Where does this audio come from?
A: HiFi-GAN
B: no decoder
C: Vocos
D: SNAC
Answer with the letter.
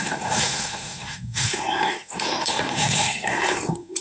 D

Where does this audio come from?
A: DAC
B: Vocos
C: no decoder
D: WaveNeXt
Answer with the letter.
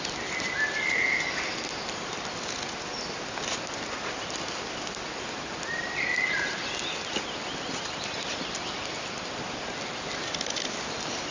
C